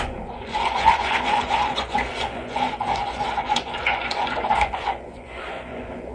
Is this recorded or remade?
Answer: remade